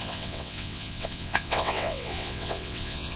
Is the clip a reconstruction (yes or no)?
yes